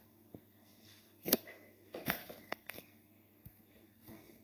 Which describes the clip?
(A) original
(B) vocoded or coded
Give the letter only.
B